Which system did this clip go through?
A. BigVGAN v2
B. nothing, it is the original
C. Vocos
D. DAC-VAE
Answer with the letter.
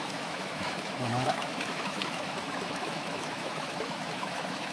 D